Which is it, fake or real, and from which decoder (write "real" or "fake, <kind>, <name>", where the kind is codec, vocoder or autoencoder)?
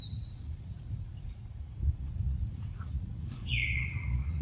fake, vocoder, Vocos